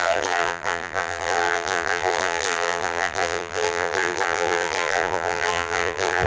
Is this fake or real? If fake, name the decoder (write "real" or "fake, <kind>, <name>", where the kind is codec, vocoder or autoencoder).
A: fake, vocoder, BigVGAN v2